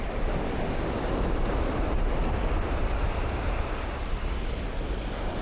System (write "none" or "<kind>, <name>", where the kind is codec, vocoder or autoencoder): none